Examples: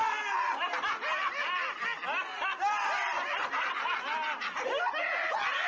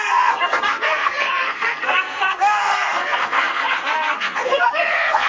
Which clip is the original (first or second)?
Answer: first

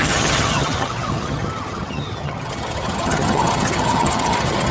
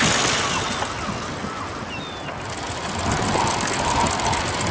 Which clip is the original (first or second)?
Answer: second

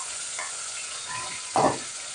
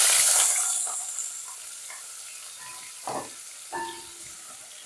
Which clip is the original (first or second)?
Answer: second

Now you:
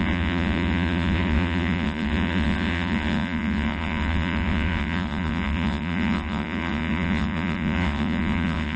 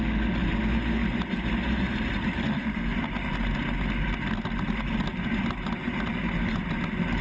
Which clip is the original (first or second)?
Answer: second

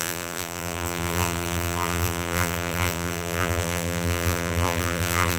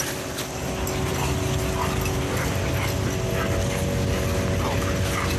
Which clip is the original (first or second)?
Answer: second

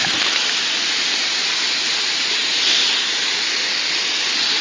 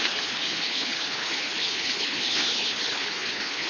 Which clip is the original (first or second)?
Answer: first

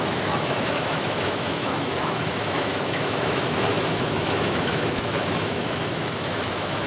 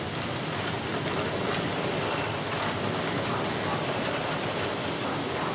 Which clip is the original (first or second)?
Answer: second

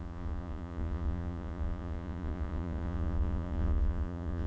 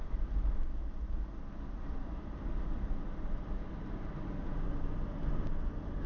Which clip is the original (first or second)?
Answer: second